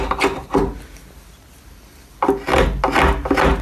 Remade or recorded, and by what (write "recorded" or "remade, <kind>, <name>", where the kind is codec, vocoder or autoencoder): recorded